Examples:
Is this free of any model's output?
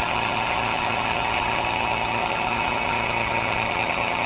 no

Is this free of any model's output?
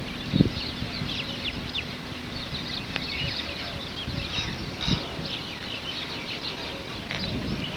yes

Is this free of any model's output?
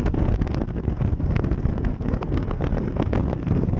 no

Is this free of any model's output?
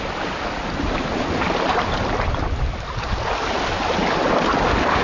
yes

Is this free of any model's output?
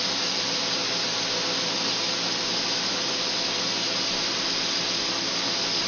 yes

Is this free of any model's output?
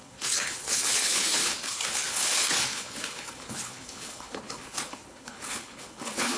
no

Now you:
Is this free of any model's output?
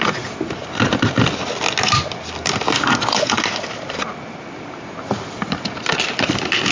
yes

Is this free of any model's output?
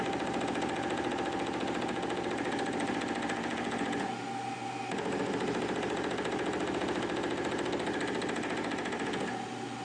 yes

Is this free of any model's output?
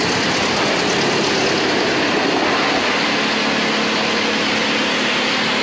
yes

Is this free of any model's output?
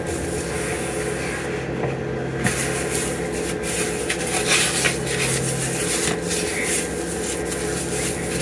yes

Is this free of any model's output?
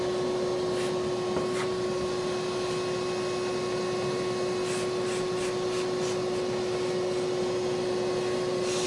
yes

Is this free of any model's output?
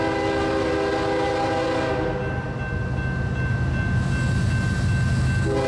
yes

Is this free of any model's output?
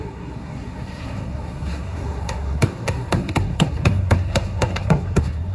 no